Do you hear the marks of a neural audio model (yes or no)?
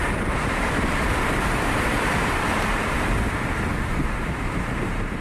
yes